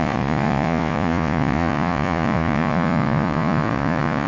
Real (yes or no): no